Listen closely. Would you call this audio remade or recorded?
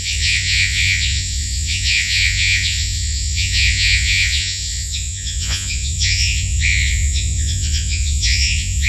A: remade